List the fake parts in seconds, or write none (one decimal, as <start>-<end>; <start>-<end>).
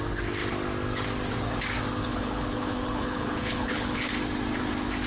2.0-4.1